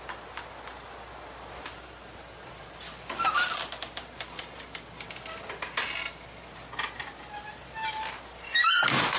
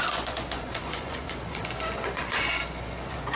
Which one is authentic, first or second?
first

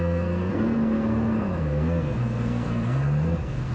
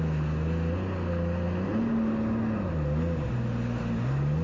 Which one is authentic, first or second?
second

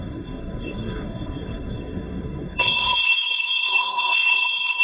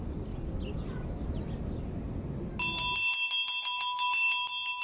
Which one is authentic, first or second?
second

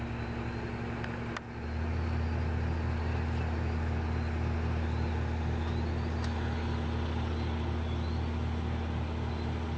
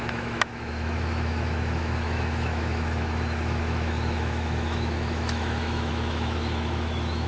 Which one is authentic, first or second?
first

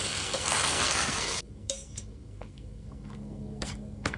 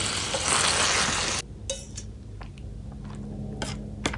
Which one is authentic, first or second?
second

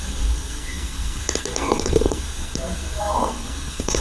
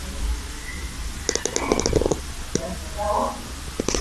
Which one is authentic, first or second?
second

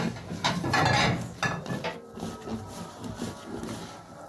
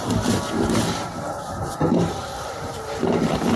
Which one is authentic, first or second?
first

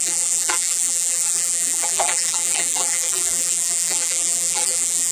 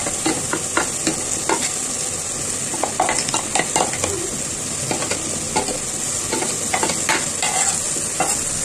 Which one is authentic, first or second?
second